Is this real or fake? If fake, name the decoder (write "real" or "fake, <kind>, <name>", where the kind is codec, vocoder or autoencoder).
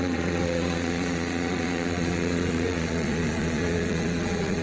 fake, vocoder, Vocos